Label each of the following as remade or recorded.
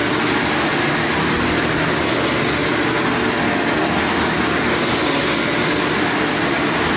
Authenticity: recorded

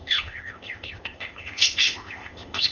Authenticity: remade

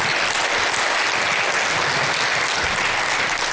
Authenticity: recorded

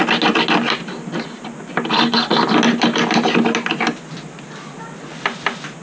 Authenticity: recorded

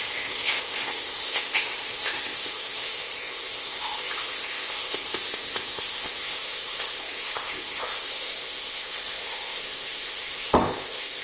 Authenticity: remade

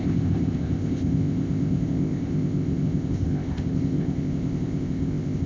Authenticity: remade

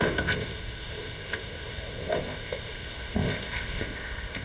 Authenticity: remade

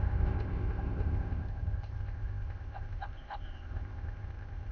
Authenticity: remade